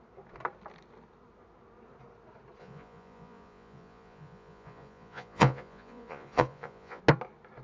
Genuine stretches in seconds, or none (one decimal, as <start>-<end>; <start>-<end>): 0.0-2.6; 7.0-7.6